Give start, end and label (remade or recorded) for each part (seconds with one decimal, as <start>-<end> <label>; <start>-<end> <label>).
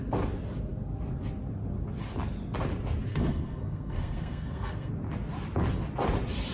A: 0.0-3.1 recorded; 3.1-4.9 remade; 4.9-6.5 recorded